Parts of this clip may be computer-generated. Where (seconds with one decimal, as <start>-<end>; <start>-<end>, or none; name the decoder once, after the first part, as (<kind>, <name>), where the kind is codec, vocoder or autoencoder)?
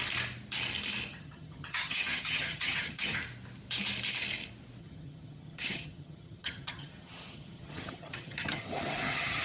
1.1-3.2 (vocoder, HiFi-GAN); 4.8-9.4